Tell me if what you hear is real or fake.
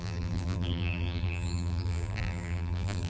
fake